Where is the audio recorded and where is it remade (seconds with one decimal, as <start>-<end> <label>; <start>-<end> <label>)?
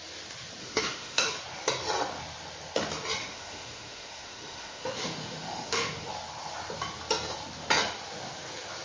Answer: 0.0-0.6 recorded; 0.6-1.3 remade; 1.3-3.2 recorded; 3.2-6.1 remade; 6.1-8.8 recorded